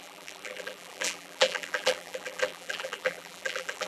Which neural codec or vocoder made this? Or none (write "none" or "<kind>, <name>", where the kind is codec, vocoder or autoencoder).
vocoder, BigVGAN v2